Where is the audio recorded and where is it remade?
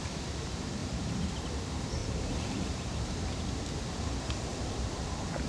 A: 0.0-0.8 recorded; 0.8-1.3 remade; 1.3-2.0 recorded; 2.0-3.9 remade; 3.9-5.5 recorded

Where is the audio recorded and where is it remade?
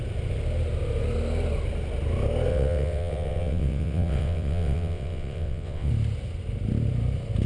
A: 0.0-2.5 recorded; 2.5-5.9 remade; 5.9-7.5 recorded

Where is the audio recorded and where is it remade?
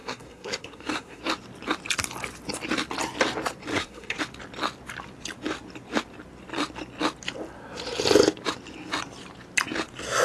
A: 0.0-1.2 remade; 1.2-3.7 recorded; 3.7-4.2 remade; 4.2-10.2 recorded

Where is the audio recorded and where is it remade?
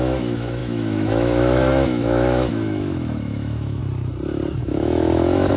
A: 0.0-3.8 remade; 3.8-4.6 recorded; 4.6-5.6 remade